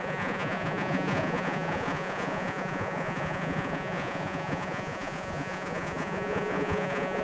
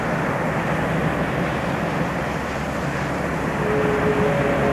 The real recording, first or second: second